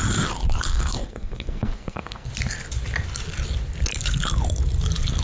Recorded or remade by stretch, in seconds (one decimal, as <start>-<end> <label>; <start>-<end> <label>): 0.0-0.7 recorded; 0.7-2.3 remade; 2.3-5.2 recorded